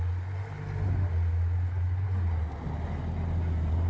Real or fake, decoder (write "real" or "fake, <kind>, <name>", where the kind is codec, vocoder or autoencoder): real